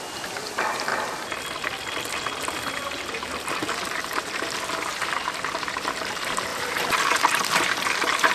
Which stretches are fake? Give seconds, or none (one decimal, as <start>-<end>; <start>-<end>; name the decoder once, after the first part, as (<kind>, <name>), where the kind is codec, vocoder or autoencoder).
0.0-0.9 (vocoder, BigVGAN v2); 2.7-8.3